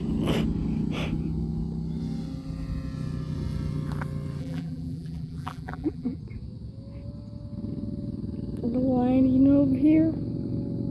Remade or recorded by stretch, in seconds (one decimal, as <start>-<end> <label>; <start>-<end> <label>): 0.0-4.4 recorded; 4.4-6.2 remade; 6.2-10.9 recorded